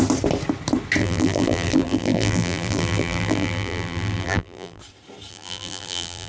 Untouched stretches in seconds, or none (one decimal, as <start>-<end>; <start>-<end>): 0.0-1.0; 4.8-5.3